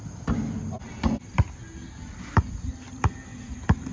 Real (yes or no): yes